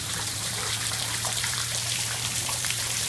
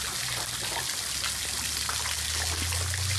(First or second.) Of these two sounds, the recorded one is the second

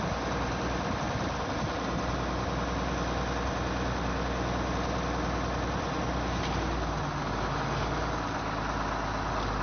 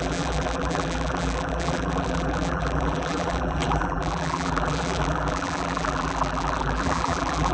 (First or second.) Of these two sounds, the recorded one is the first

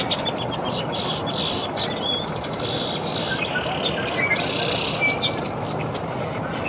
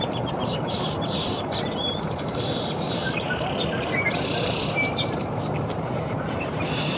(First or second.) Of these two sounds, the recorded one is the first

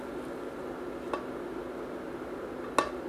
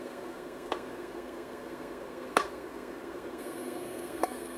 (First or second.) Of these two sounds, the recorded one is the first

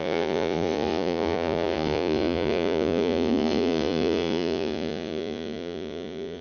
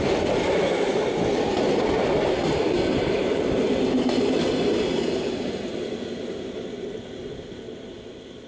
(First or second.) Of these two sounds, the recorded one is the second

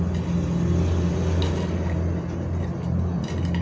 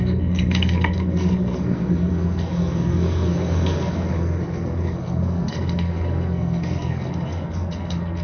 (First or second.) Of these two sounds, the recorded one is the first